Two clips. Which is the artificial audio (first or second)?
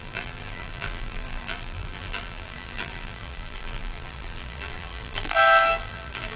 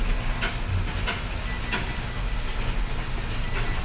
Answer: first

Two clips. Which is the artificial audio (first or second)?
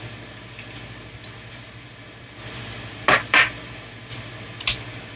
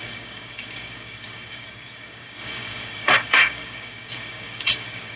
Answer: second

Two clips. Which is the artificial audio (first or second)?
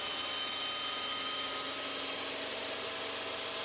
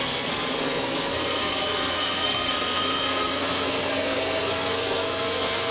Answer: second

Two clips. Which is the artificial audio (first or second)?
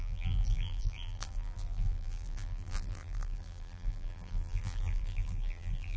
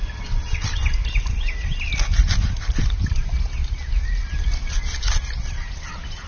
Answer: first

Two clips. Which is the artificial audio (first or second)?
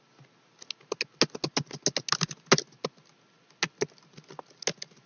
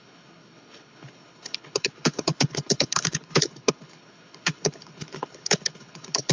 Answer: second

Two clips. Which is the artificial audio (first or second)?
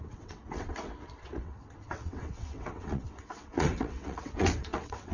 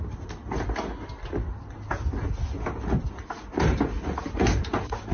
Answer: first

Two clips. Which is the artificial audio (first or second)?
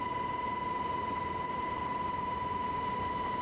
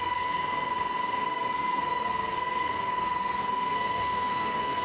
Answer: second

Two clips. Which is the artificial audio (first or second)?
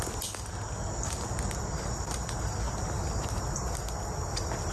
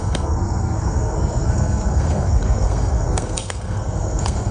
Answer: second